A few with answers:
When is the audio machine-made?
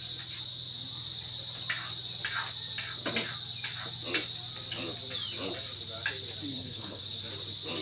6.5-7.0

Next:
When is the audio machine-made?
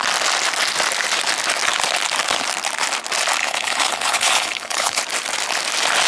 3.4-5.0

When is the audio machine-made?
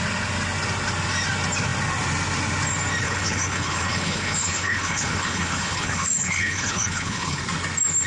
3.0-7.4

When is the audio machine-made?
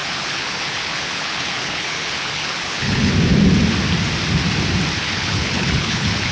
0.0-3.1; 5.0-6.3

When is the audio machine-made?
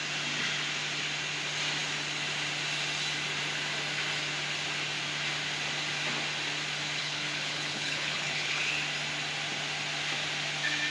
7.0-8.7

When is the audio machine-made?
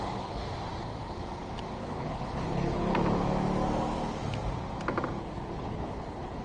0.0-0.4; 1.8-2.9; 5.2-6.4